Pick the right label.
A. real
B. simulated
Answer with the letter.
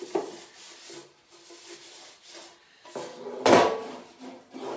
A